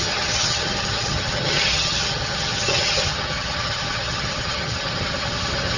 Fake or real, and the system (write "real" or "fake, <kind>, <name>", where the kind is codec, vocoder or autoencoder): fake, vocoder, HiFi-GAN